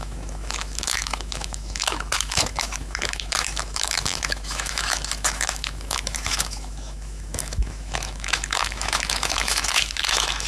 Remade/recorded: remade